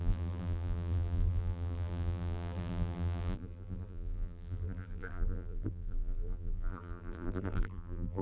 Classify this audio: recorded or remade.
remade